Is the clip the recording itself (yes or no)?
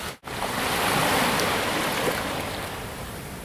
yes